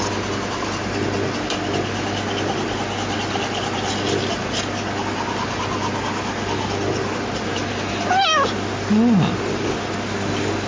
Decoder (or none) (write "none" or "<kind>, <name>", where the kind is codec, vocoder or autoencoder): none